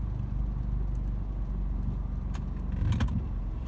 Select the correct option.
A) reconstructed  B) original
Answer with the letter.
B